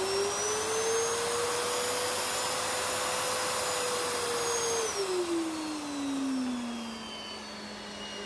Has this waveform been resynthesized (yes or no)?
no